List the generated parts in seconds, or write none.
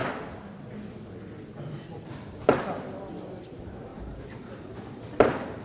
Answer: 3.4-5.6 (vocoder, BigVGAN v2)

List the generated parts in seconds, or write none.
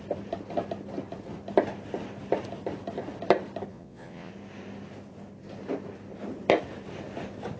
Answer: 3.7-4.3 (vocoder, Vocos)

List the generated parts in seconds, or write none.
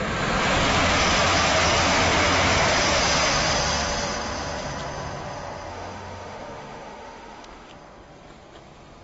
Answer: 5.7-7.7 (autoencoder, DAC-VAE)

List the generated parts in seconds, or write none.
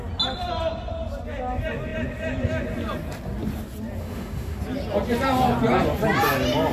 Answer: 4.0-4.6 (autoencoder, DAC-VAE)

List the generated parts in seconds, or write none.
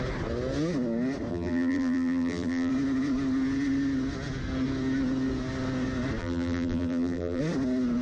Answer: 1.3-2.7 (vocoder, BigVGAN v2); 6.2-7.4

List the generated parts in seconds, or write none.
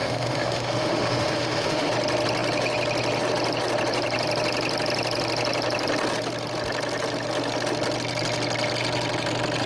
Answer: 0.0-1.9 (autoencoder, DAC-VAE)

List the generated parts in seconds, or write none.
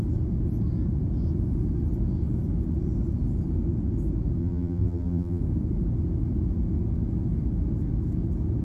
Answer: 4.4-5.4 (vocoder, BigVGAN v2)